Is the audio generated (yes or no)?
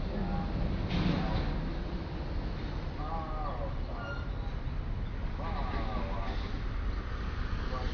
no